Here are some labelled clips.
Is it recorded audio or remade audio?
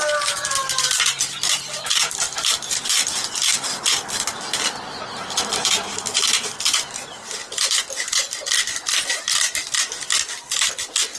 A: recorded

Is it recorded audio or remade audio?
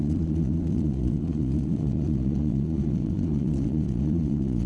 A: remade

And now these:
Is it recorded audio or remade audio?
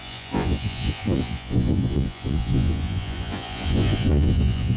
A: remade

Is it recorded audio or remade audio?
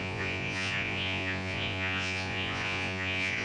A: remade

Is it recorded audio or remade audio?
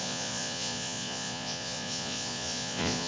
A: remade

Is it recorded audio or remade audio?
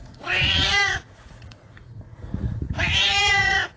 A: remade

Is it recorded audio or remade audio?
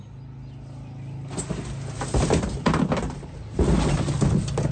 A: recorded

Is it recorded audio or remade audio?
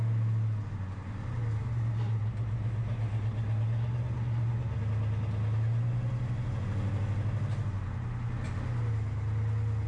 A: recorded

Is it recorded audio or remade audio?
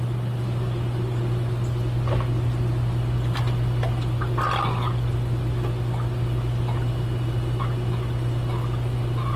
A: recorded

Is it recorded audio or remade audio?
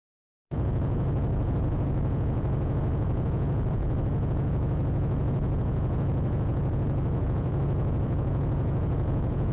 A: remade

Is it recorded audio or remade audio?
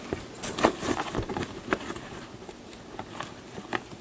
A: recorded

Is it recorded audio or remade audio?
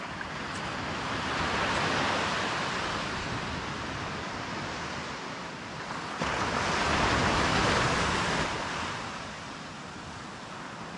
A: recorded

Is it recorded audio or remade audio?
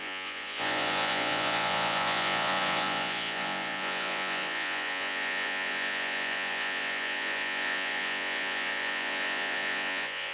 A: remade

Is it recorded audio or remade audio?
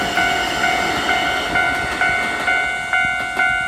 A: recorded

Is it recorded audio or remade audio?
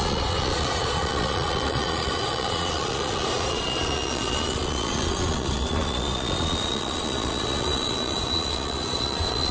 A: remade